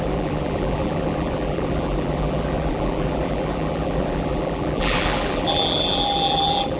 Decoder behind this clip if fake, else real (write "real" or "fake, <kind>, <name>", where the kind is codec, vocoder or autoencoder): fake, vocoder, BigVGAN v2